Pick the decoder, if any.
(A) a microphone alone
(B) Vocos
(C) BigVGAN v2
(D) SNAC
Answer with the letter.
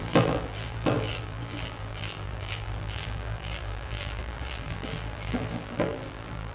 C